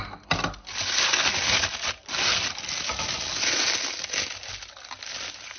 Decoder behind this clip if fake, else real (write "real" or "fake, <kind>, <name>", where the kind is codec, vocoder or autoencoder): real